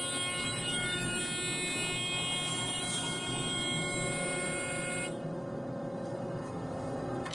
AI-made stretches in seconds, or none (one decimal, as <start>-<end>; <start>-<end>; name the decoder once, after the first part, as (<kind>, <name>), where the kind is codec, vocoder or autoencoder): 0.4-1.2 (autoencoder, DAC-VAE); 2.5-7.3